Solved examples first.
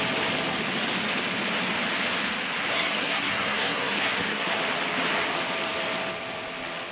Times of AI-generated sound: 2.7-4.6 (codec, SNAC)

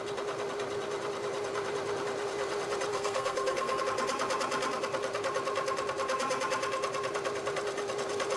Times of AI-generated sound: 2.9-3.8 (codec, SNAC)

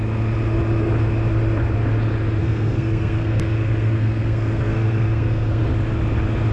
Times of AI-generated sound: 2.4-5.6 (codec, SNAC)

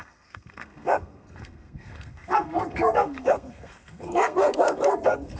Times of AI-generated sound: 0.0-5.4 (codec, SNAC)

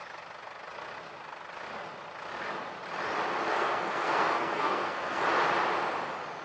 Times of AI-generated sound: 3.5-5.2 (codec, SNAC)

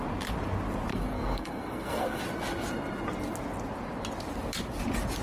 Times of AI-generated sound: 0.9-2.2 (codec, SNAC)

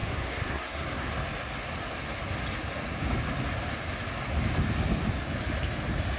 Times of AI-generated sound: 0.0-1.1 (codec, SNAC)

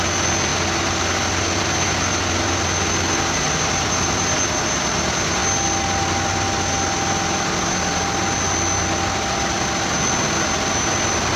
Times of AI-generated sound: none